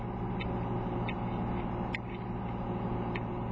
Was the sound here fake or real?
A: real